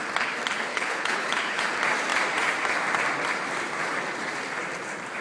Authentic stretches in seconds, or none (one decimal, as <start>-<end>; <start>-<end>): 0.0-0.7; 1.6-5.2